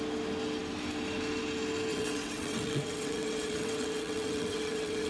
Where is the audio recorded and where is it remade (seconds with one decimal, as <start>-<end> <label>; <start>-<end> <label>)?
0.0-1.9 recorded; 1.9-5.1 remade